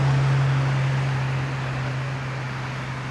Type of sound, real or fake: real